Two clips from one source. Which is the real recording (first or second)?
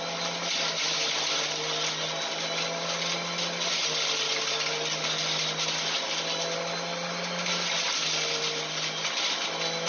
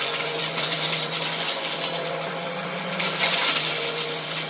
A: first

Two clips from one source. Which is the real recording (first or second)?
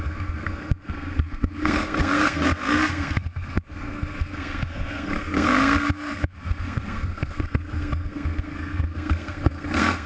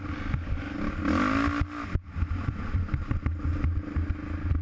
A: second